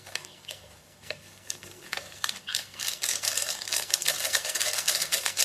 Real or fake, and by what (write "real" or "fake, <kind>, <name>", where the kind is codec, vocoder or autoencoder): fake, codec, SNAC